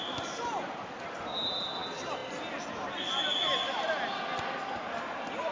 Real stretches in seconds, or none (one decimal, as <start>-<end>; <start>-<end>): 0.0-5.5